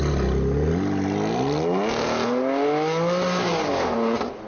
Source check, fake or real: real